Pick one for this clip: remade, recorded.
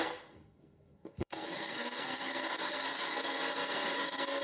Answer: remade